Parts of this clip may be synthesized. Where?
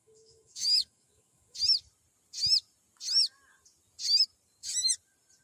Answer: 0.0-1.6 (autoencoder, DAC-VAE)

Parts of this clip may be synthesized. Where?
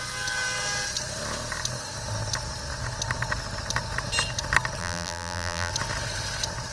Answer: 4.8-5.7 (vocoder, BigVGAN v2)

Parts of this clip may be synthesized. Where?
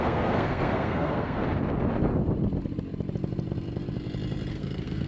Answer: 0.0-1.4 (codec, SNAC); 4.5-5.1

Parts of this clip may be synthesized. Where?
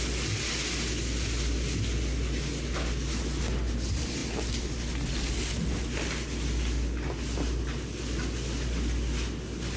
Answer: none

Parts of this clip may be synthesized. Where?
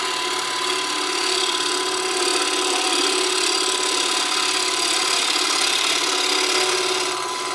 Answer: 0.0-7.5 (vocoder, BigVGAN v2)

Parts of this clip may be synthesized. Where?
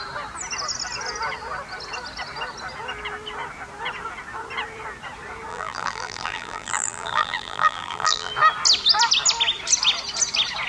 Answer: 5.5-8.3 (vocoder, BigVGAN v2)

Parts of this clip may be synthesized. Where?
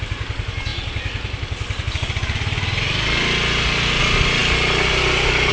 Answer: none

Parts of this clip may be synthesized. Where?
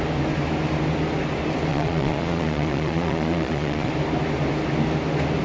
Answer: 1.7-3.9 (vocoder, Vocos)